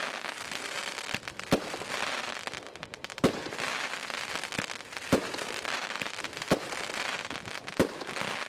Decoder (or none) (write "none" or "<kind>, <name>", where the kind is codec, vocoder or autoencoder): none